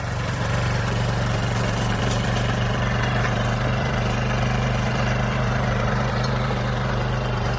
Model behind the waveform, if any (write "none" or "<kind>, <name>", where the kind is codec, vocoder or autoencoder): vocoder, BigVGAN v2